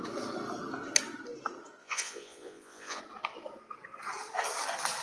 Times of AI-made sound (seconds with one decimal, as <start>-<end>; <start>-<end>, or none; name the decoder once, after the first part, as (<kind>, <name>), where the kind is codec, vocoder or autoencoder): 1.8-3.0 (vocoder, Vocos)